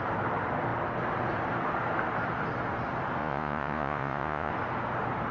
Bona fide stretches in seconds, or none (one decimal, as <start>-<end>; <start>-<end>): 0.0-3.2; 4.5-5.3